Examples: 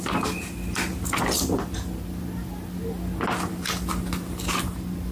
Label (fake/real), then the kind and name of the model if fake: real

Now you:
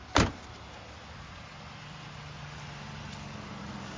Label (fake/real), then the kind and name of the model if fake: real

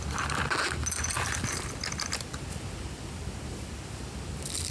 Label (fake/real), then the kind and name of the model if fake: real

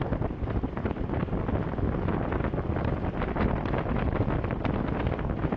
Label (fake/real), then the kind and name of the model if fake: real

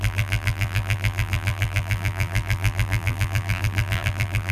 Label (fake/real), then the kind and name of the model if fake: fake, vocoder, BigVGAN v2